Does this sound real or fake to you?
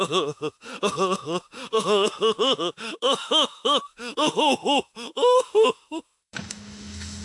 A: fake